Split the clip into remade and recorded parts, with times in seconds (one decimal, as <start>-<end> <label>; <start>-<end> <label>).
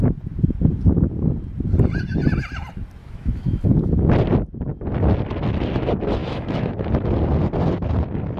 0.0-3.0 recorded; 3.0-3.6 remade; 3.6-6.2 recorded; 6.2-6.9 remade; 6.9-8.4 recorded